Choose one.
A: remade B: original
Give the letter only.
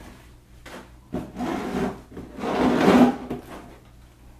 B